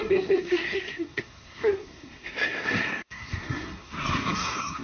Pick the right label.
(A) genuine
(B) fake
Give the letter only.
B